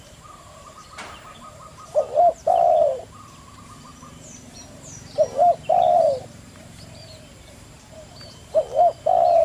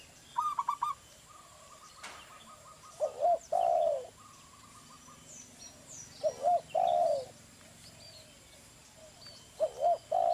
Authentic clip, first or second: second